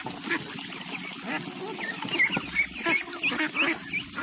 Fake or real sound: real